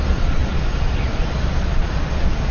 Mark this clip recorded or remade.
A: remade